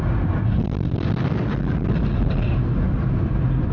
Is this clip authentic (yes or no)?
yes